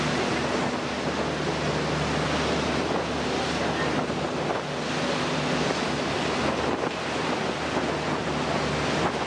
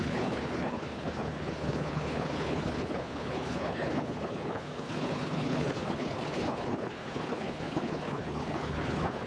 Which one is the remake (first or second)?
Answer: second